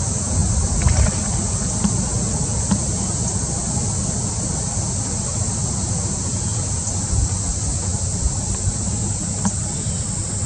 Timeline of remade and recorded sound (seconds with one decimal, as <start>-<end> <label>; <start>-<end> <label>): 0.0-6.3 recorded; 6.3-6.8 remade; 6.8-10.5 recorded